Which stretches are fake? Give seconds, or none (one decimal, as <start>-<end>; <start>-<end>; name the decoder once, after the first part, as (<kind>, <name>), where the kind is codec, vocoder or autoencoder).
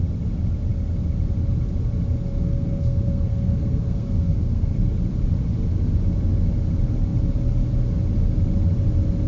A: 2.3-4.9 (codec, SNAC)